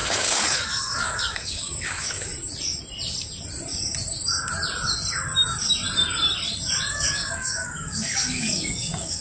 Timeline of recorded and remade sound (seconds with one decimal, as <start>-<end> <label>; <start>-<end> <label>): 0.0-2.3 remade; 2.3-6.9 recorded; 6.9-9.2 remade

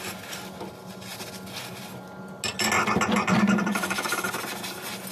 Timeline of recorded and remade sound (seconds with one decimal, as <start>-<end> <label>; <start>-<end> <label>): 0.0-3.7 recorded; 3.7-4.3 remade; 4.3-5.1 recorded

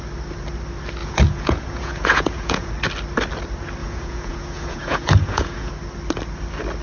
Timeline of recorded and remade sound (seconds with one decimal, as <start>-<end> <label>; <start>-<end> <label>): 0.0-1.0 recorded; 1.0-2.7 remade; 2.7-3.8 recorded; 3.8-5.7 remade; 5.7-6.8 recorded